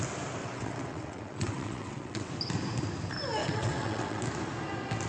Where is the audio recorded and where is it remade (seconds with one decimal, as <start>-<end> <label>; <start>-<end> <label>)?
0.0-0.4 recorded; 0.4-2.3 remade; 2.3-3.4 recorded; 3.4-4.2 remade; 4.2-5.1 recorded